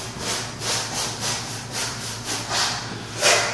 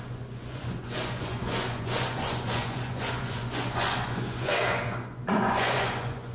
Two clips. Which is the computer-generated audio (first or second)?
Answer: second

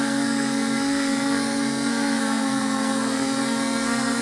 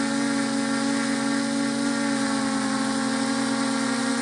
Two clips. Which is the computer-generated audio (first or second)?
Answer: first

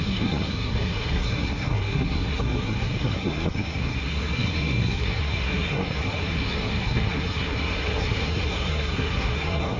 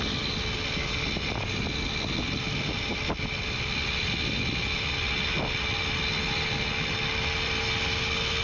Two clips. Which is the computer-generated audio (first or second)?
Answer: first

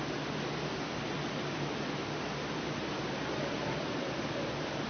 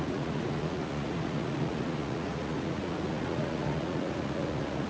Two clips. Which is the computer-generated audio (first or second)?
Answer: second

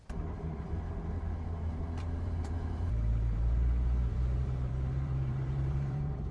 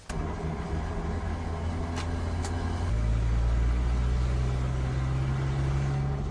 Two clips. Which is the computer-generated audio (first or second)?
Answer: first